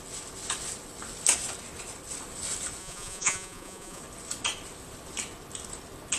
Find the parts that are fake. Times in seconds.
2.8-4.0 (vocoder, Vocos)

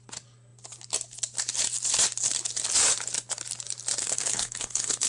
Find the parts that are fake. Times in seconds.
4.0-5.1 (codec, SNAC)

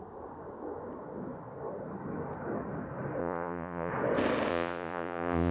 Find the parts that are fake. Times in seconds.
3.2-3.9 (vocoder, Vocos); 4.5-5.5

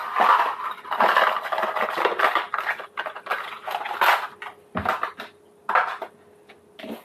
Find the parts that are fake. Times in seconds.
none

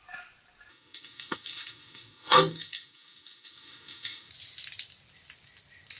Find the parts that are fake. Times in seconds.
0.7-4.3 (codec, DAC)

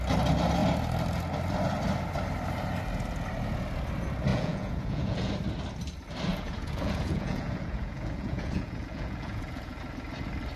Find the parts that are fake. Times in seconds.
4.3-5.3 (vocoder, Vocos); 6.3-9.8

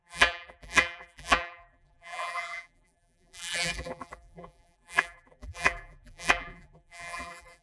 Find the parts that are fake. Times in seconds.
0.0-7.6 (vocoder, BigVGAN v2)

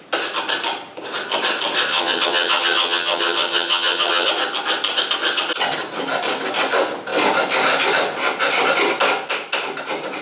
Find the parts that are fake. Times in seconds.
1.9-4.3 (vocoder, HiFi-GAN)